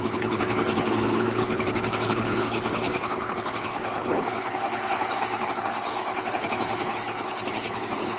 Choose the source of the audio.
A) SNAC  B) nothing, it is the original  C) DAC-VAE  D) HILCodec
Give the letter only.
D